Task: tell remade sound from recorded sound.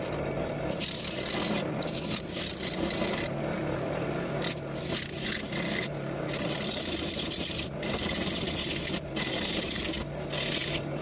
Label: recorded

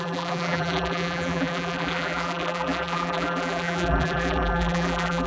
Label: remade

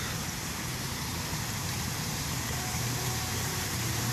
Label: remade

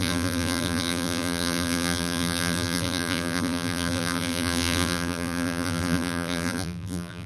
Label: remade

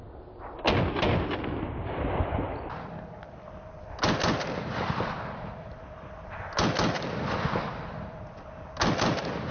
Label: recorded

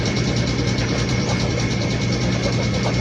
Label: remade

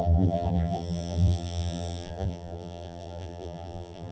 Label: remade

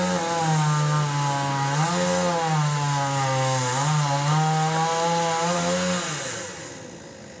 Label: recorded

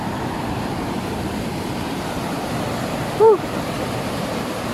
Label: remade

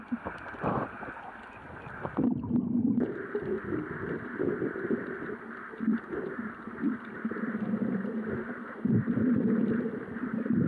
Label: remade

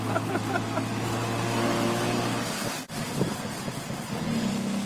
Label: recorded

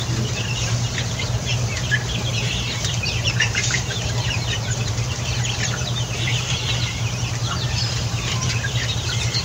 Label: remade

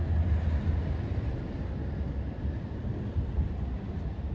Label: remade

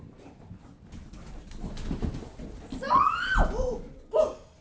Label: recorded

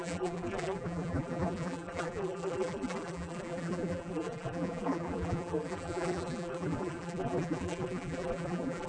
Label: remade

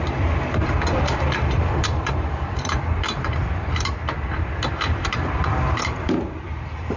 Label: remade